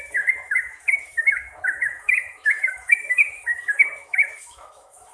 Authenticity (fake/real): fake